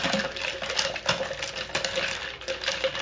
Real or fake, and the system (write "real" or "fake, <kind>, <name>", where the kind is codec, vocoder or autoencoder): real